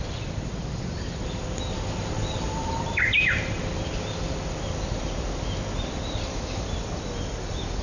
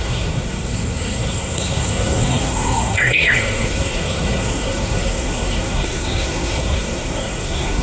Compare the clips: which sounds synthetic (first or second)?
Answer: second